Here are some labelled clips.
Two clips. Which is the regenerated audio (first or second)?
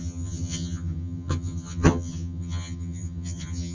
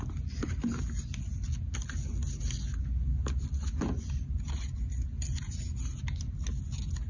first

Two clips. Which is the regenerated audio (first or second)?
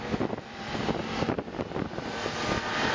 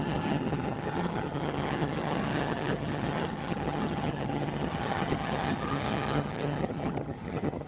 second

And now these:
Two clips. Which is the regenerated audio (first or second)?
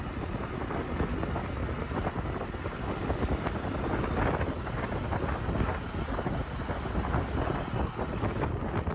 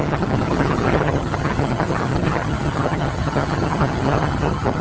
second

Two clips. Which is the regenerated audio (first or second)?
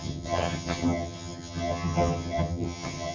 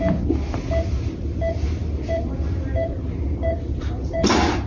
first